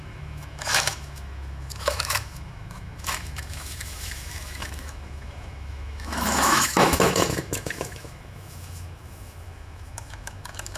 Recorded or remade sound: remade